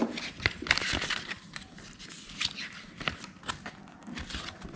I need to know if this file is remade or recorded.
remade